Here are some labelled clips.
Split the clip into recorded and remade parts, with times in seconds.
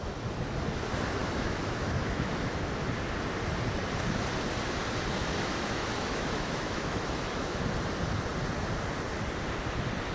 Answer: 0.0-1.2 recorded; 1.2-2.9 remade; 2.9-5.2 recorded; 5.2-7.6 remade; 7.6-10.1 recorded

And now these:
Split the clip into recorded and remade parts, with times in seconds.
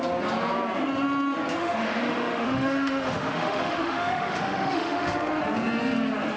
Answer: 0.0-1.6 recorded; 1.6-5.4 remade; 5.4-6.4 recorded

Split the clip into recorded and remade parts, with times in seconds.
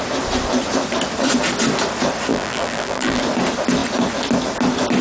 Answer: 0.0-2.3 recorded; 2.3-3.2 remade; 3.2-5.0 recorded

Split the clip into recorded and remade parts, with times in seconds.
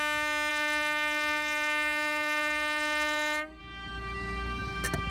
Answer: 0.0-0.5 recorded; 0.5-3.6 remade; 3.6-5.1 recorded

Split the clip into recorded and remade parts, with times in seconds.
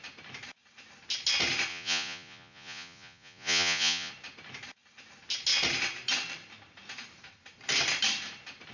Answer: 0.0-1.7 recorded; 1.7-4.1 remade; 4.1-8.7 recorded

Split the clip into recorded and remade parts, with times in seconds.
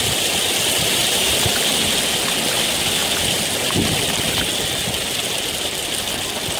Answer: 0.0-6.6 recorded